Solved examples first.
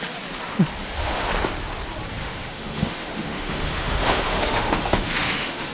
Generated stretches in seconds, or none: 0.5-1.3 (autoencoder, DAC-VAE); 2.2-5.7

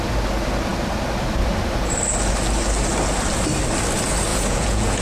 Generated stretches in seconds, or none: 4.3-5.0 (vocoder, Vocos)

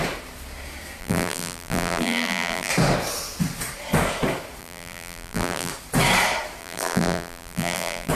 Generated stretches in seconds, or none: 1.0-2.7 (vocoder, BigVGAN v2); 4.6-5.7; 6.6-8.1